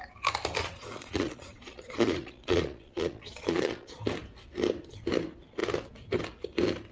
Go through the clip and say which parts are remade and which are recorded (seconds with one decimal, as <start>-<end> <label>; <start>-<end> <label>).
0.0-0.6 recorded; 0.6-4.0 remade; 4.0-6.9 recorded